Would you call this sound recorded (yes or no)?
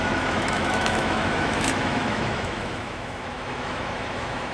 no